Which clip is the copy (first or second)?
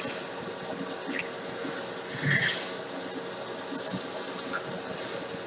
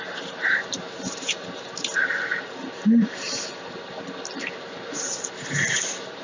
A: second